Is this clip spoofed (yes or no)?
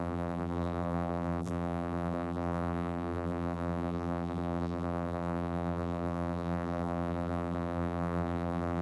yes